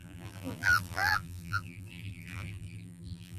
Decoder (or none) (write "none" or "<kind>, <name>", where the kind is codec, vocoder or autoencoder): vocoder, BigVGAN v2